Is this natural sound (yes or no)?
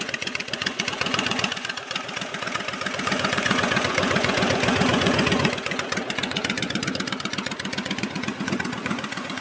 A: no